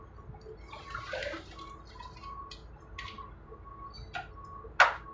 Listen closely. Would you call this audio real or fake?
real